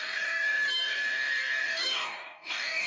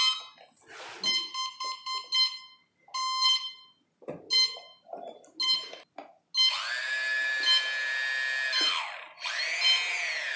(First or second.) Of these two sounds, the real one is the second